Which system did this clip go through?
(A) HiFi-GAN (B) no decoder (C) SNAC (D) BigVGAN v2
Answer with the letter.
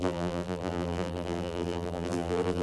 D